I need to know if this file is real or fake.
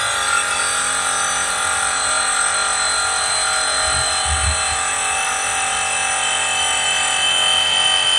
real